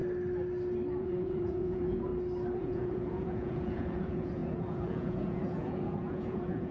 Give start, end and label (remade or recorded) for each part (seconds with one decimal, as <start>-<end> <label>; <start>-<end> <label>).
0.0-1.0 recorded; 1.0-2.1 remade; 2.1-2.6 recorded; 2.6-6.7 remade